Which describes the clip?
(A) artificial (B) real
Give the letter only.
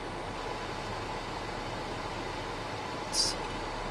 B